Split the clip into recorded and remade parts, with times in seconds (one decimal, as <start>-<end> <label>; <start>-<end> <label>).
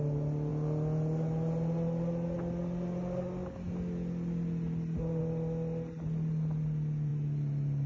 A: 0.0-7.9 recorded